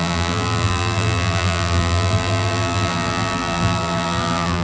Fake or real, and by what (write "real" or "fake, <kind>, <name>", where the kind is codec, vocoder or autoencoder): fake, vocoder, BigVGAN v2